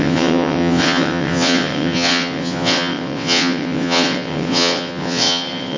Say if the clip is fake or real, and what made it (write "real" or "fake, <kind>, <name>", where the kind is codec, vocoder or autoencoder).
fake, vocoder, WaveNeXt